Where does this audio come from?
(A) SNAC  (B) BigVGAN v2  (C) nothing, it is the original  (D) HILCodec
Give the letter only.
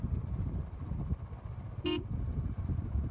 C